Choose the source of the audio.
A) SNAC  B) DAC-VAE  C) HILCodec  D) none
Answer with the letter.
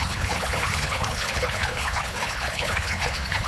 C